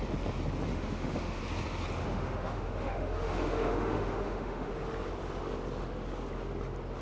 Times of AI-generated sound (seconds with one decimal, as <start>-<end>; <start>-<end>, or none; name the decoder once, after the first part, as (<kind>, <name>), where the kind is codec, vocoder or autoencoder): 0.7-1.4 (autoencoder, DAC-VAE); 2.0-4.7